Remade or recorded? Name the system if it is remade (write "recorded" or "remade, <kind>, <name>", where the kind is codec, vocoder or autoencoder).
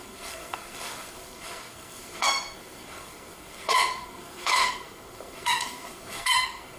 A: remade, codec, SNAC